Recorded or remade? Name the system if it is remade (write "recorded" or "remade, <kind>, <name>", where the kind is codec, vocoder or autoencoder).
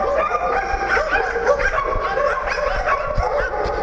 recorded